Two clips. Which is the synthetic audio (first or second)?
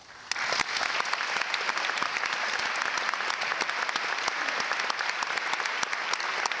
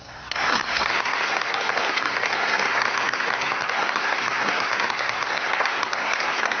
second